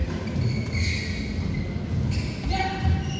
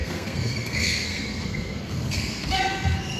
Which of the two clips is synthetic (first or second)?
second